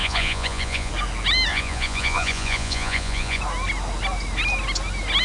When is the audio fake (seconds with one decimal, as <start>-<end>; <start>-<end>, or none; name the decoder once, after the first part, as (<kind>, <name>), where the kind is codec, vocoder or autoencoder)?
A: 0.0-0.9 (vocoder, Vocos); 1.5-3.4